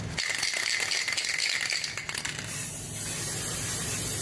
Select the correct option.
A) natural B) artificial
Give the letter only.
A